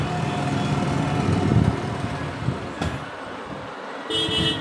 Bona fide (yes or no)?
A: yes